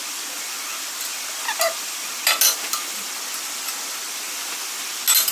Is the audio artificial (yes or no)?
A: no